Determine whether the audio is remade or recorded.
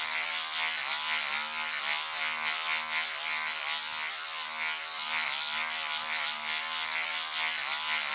recorded